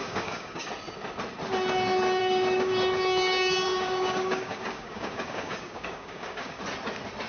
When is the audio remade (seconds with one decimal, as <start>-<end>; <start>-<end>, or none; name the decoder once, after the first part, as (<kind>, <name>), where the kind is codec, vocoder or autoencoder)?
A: 0.0-0.7 (codec, DAC); 2.2-6.6

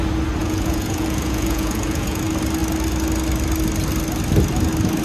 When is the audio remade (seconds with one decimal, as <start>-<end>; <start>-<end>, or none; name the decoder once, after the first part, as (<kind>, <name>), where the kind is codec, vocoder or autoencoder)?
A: 0.4-2.2 (vocoder, Vocos)

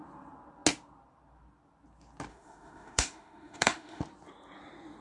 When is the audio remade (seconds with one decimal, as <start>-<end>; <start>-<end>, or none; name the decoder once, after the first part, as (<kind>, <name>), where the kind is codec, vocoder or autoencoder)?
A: 2.3-4.0 (autoencoder, DAC-VAE)

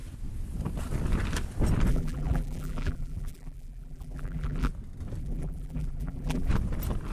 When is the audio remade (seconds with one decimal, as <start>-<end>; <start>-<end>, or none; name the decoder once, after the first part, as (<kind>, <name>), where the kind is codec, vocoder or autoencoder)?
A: 1.9-4.7 (vocoder, BigVGAN v2); 5.2-6.5

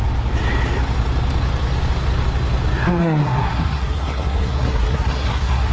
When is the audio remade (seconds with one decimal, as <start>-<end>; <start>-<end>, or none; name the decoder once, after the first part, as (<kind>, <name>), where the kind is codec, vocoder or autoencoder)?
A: 3.0-5.7 (codec, SNAC)

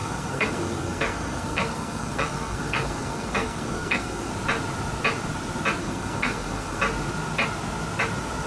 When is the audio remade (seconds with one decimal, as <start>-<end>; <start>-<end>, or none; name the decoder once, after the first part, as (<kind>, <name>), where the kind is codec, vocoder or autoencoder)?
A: 0.0-4.3 (codec, SNAC); 5.8-6.8

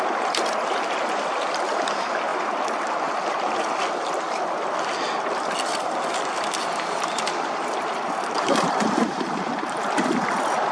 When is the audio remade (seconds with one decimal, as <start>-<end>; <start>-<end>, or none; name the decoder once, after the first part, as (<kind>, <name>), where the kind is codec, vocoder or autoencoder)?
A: none

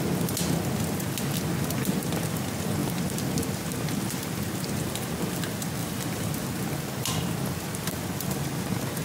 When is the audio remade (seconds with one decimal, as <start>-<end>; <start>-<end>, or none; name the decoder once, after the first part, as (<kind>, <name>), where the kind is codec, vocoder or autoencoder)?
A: 5.8-6.3 (vocoder, BigVGAN v2)